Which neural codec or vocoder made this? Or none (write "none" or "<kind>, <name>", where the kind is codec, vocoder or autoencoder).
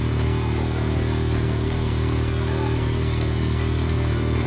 codec, SNAC